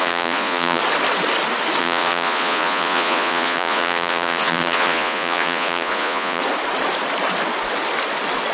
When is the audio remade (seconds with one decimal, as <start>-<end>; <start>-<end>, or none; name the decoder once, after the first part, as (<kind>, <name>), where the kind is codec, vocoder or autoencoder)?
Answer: 0.0-0.8 (vocoder, Vocos); 1.8-6.4